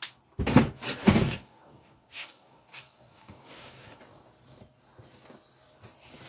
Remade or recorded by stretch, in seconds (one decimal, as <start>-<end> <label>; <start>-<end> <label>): 0.0-1.0 recorded; 1.0-4.0 remade; 4.0-6.3 recorded